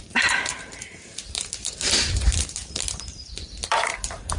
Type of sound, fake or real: fake